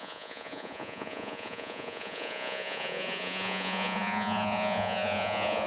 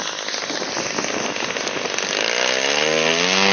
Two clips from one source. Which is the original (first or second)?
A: second